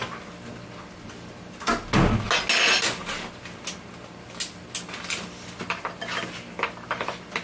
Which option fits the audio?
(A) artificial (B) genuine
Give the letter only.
B